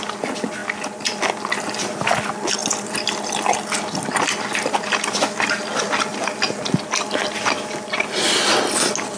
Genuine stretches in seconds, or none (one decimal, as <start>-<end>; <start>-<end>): 0.0-9.2